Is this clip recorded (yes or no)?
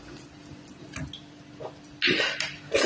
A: yes